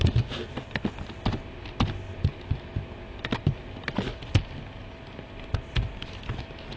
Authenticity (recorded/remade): recorded